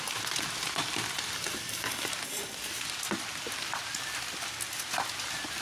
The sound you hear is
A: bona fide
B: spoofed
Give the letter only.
A